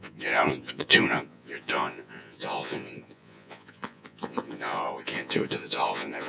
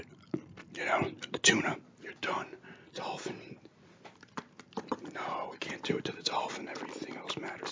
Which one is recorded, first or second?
second